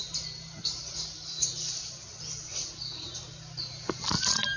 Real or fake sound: real